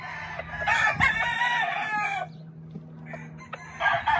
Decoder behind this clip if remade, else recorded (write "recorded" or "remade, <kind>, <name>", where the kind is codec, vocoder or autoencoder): recorded